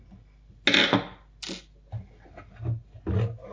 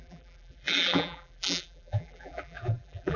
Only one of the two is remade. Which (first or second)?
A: second